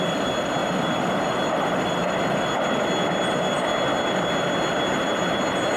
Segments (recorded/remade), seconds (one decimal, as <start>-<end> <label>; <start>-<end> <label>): 0.0-0.6 recorded; 0.6-2.8 remade; 2.8-5.8 recorded